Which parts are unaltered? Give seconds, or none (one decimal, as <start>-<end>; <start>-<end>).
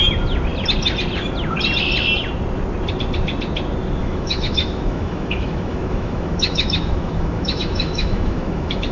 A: 0.0-4.0